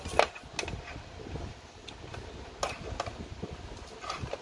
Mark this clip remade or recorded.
recorded